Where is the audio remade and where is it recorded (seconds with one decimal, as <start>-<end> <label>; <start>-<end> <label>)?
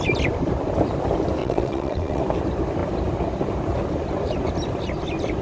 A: 0.0-1.4 recorded; 1.4-2.2 remade; 2.2-5.4 recorded